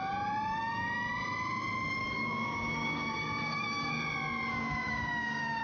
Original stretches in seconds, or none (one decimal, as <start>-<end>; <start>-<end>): 0.0-2.0; 3.9-4.5